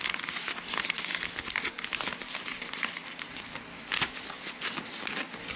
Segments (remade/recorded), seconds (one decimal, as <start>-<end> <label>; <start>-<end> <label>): 0.0-5.6 recorded